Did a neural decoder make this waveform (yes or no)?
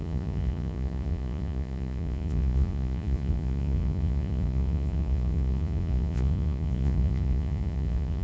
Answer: yes